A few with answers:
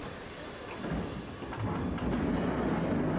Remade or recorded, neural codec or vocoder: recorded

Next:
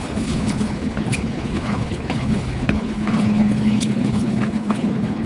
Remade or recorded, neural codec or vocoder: remade, codec, HILCodec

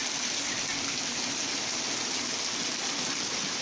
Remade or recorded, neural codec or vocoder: recorded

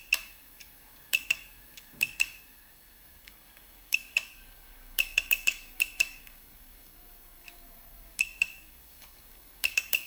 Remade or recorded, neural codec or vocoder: remade, codec, DAC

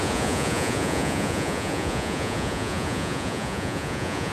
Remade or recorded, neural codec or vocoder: remade, vocoder, Vocos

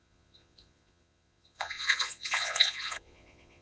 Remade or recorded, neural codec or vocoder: remade, vocoder, Vocos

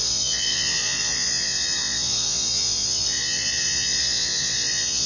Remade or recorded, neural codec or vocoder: remade, vocoder, Vocos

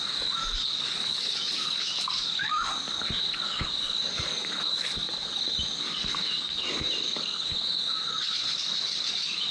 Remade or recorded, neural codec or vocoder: remade, codec, DAC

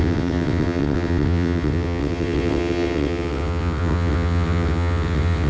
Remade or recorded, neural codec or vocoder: remade, vocoder, WaveNeXt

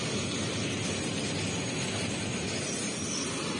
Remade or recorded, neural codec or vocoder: recorded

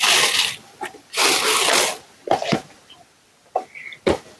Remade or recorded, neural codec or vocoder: recorded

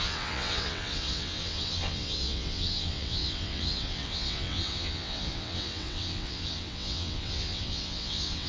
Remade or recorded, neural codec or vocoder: remade, vocoder, WaveNeXt